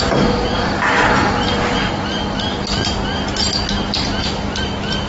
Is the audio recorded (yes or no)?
yes